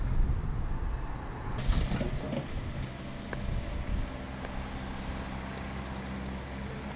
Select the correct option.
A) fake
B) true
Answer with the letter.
B